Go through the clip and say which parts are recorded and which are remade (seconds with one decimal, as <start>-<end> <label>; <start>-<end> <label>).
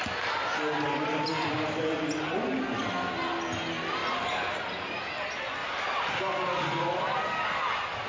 0.0-1.3 recorded; 1.3-2.1 remade; 2.1-4.0 recorded; 4.0-5.1 remade; 5.1-8.1 recorded